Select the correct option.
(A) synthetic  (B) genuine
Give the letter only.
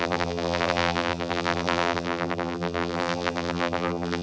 A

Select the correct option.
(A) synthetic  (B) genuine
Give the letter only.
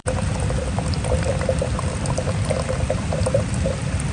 A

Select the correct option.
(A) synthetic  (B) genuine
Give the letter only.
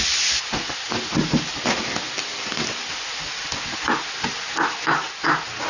B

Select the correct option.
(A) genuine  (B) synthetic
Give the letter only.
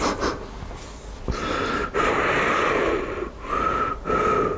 A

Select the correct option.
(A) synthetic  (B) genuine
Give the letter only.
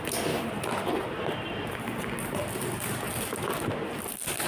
B